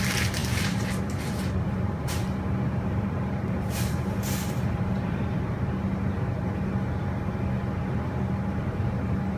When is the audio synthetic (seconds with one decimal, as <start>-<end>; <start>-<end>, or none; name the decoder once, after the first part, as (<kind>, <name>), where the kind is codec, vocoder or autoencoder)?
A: 0.4-5.6 (vocoder, BigVGAN v2)